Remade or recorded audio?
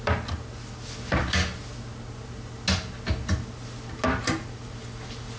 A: recorded